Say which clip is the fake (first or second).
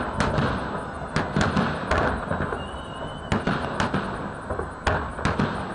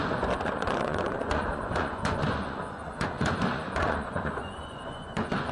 second